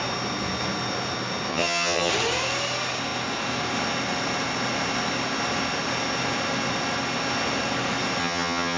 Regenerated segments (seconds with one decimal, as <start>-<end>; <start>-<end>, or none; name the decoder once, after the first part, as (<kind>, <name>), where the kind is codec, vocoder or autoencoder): 1.5-2.1 (vocoder, HiFi-GAN); 8.2-8.8